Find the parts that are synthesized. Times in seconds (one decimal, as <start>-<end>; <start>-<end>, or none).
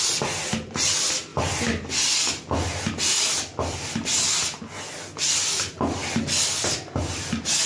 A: none